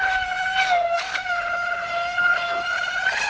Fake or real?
real